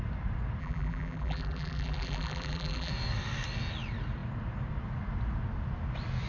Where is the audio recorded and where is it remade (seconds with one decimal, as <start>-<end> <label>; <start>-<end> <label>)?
0.0-0.6 recorded; 0.6-2.9 remade; 2.9-6.3 recorded

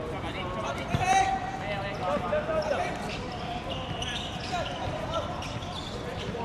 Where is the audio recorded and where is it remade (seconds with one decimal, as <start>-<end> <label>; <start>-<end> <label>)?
0.0-2.5 recorded; 2.5-6.4 remade